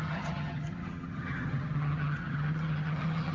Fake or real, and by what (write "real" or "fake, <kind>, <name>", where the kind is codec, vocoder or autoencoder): fake, vocoder, HiFi-GAN